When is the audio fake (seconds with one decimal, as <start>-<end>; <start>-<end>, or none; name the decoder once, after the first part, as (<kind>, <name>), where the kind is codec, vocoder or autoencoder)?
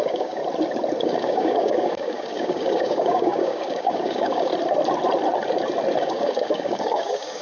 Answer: 0.0-0.4 (codec, DAC); 1.0-4.5; 6.0-7.4